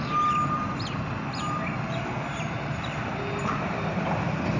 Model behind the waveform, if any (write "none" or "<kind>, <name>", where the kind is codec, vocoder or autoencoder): none